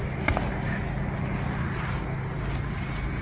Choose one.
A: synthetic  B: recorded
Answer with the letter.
B